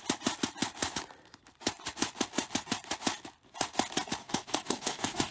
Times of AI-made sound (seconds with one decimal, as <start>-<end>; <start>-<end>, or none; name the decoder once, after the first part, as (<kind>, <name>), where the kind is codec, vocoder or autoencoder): 4.2-5.3 (codec, DAC)